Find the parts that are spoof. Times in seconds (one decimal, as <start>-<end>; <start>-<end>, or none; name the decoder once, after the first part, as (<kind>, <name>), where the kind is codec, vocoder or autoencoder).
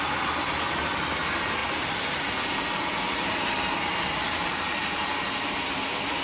1.6-2.6 (vocoder, BigVGAN v2)